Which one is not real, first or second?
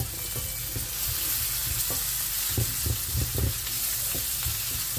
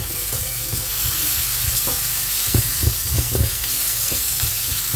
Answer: second